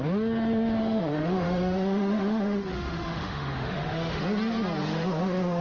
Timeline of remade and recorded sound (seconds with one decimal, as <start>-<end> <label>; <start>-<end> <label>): 0.0-0.8 recorded; 0.8-4.2 remade; 4.2-4.8 recorded; 4.8-5.6 remade